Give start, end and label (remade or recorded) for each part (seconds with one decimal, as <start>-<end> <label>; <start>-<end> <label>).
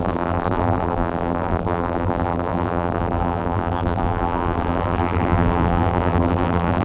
0.0-6.8 remade